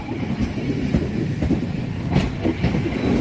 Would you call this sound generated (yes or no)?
no